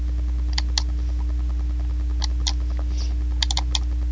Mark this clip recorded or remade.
recorded